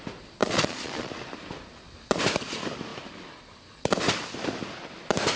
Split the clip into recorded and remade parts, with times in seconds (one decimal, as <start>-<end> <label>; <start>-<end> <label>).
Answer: 0.0-0.4 recorded; 0.4-1.1 remade; 1.1-5.4 recorded